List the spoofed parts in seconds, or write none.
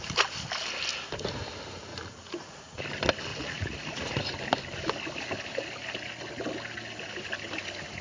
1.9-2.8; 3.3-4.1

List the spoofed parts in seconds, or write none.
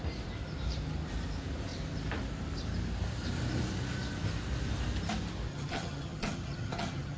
5.5-7.2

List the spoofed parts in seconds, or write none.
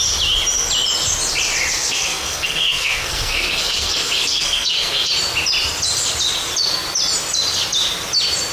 1.7-5.1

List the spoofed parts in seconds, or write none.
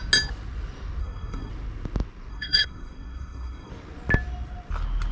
1.0-1.5; 2.3-3.7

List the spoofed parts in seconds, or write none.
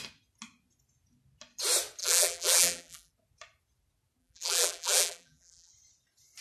2.0-3.1; 4.2-5.7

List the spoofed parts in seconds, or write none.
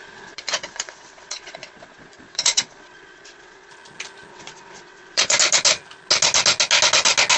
0.0-3.7; 4.3-5.4